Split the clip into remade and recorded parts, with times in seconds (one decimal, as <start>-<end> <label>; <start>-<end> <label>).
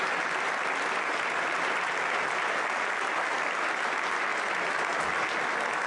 0.0-5.9 recorded